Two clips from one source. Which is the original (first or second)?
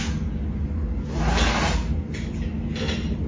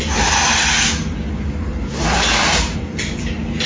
first